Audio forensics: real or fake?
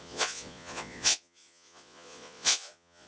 fake